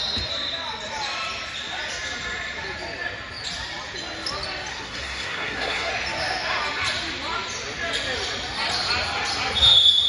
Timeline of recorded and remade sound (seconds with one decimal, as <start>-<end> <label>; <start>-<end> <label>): 0.0-4.7 recorded; 4.7-5.9 remade; 5.9-10.1 recorded